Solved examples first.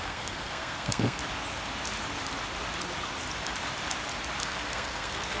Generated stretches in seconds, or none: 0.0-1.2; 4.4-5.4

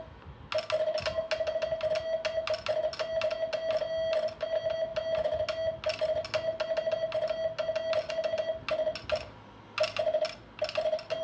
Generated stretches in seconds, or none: none

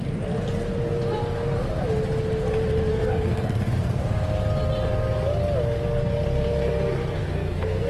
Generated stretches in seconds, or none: 2.9-4.0; 7.2-7.9